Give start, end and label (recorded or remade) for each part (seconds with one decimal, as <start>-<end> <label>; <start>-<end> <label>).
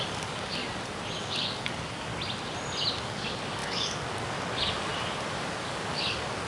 0.0-0.6 remade; 0.6-1.2 recorded; 1.2-2.1 remade; 2.1-2.9 recorded; 2.9-4.9 remade; 4.9-5.5 recorded; 5.5-6.5 remade